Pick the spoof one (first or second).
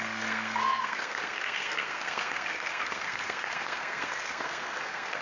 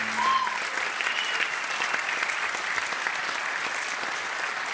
first